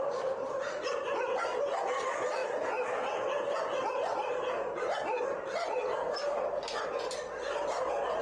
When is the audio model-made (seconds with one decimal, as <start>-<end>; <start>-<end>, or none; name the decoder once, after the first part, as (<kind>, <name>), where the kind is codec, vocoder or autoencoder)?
none